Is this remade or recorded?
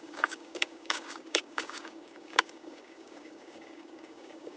remade